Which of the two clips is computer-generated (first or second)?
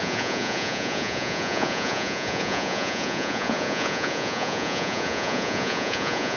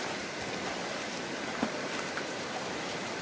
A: first